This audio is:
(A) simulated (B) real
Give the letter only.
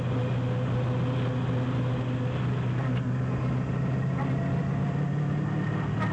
B